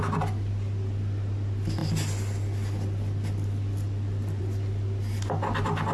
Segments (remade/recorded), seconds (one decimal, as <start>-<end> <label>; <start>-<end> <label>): 0.0-5.9 recorded